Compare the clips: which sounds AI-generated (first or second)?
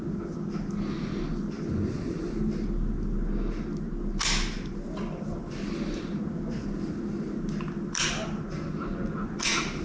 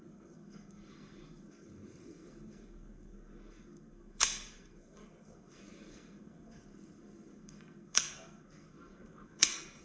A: second